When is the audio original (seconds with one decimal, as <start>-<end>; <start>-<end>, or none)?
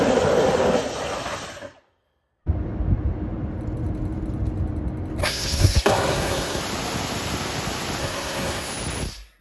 0.0-5.2; 6.6-8.0; 8.7-9.4